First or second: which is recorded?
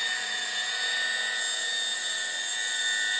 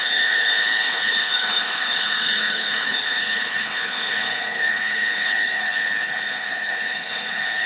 first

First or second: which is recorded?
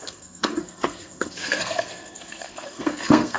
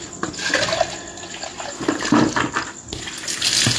second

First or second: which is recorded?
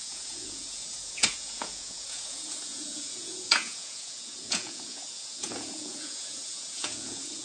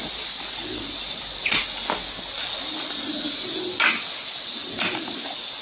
second